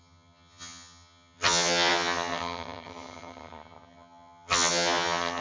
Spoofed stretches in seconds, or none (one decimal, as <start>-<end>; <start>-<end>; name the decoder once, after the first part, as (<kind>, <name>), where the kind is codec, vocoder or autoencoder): 0.0-5.4 (vocoder, HiFi-GAN)